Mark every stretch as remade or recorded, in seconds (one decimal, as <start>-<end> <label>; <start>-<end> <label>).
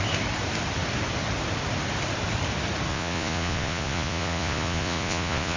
0.0-2.9 recorded; 2.9-5.6 remade